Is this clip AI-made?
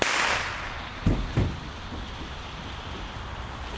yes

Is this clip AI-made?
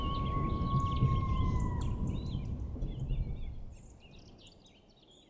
no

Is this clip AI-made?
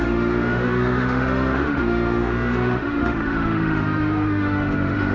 yes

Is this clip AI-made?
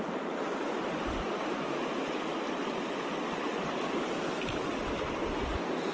no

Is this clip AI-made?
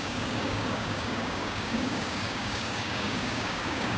yes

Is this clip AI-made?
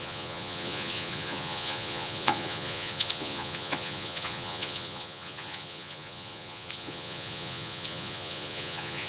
yes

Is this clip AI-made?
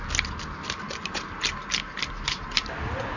no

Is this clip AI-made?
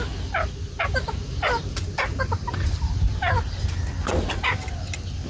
no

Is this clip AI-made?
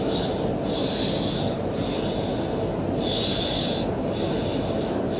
no